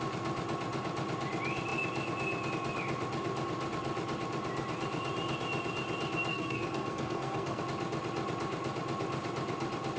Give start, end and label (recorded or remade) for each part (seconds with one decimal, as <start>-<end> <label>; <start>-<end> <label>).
0.0-6.3 recorded; 6.3-7.6 remade; 7.6-10.0 recorded

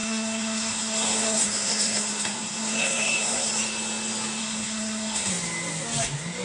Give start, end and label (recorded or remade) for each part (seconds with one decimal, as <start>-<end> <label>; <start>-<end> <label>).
0.0-3.5 remade; 3.5-4.4 recorded; 4.4-5.3 remade; 5.3-6.4 recorded

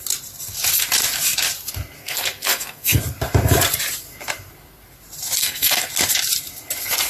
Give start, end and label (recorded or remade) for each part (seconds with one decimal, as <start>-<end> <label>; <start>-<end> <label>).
0.0-2.0 recorded; 2.0-3.0 remade; 3.0-5.4 recorded; 5.4-5.9 remade; 5.9-7.1 recorded

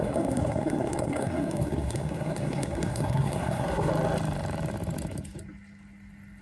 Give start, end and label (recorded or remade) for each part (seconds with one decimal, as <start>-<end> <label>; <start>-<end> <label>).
0.0-3.9 remade; 3.9-6.4 recorded